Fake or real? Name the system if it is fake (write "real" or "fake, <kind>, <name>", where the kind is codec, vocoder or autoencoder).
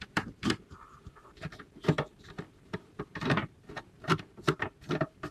fake, vocoder, BigVGAN v2